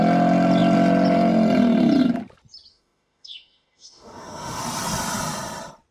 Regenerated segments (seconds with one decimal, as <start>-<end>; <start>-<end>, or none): 2.7-4.6